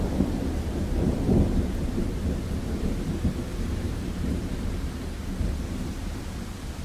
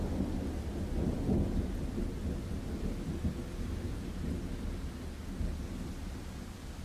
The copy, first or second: first